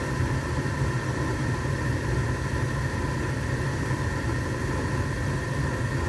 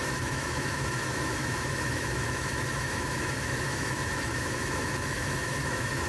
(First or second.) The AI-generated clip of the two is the second